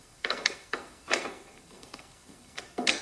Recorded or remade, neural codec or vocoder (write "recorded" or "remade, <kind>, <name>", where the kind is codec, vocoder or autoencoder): remade, codec, SNAC